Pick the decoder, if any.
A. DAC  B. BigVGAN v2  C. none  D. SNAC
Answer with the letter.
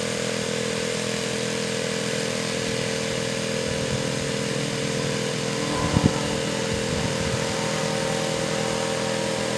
C